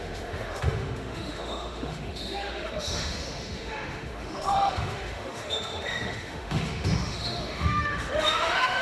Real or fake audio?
fake